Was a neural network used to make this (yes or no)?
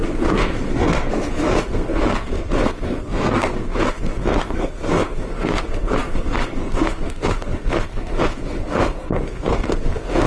yes